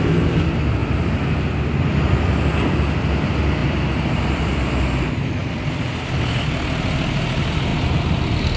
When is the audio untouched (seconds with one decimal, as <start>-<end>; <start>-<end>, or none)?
0.0-3.6; 4.4-5.4; 5.9-7.7